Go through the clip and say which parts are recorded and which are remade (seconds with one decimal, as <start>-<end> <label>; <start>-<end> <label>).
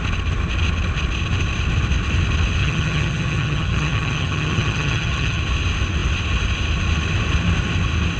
0.0-2.6 recorded; 2.6-5.4 remade; 5.4-8.2 recorded